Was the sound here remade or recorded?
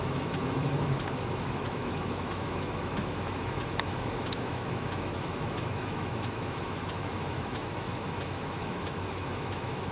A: remade